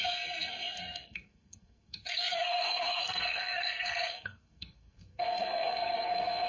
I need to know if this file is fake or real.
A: fake